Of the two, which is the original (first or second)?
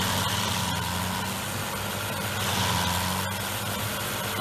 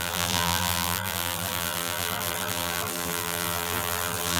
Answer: first